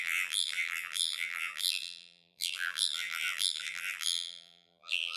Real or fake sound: fake